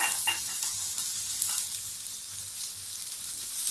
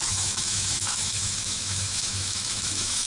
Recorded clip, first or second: first